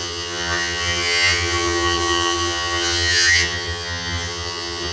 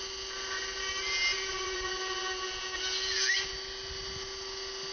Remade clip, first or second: first